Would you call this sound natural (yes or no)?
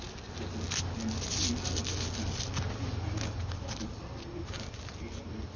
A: yes